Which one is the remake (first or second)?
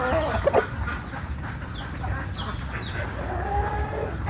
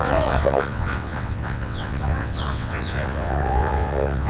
second